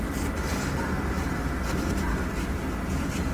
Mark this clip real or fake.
real